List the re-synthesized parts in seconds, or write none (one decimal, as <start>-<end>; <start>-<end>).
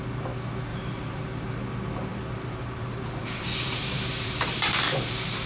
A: 0.7-1.2; 2.1-5.5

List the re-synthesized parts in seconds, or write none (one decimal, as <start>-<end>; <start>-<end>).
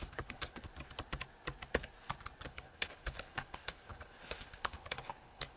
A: 0.0-0.7; 2.4-5.6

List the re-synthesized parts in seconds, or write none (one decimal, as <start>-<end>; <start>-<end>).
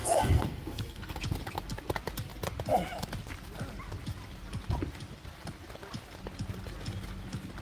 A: 0.0-1.2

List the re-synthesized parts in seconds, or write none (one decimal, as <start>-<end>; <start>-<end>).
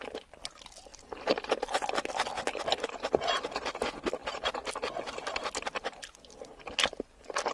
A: none